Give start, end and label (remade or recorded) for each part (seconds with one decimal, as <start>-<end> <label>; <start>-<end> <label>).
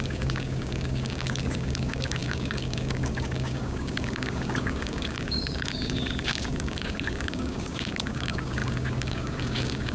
0.0-9.9 remade